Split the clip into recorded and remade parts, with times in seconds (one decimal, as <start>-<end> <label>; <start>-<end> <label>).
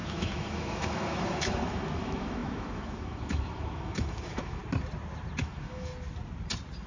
0.0-4.6 remade; 4.6-5.4 recorded; 5.4-5.9 remade; 5.9-6.9 recorded